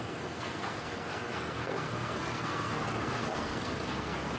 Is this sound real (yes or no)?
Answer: no